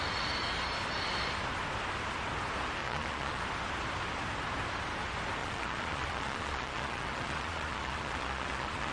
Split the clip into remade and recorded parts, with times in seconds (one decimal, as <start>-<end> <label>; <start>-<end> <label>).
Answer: 0.0-2.8 recorded; 2.8-3.4 remade; 3.4-5.4 recorded; 5.4-8.9 remade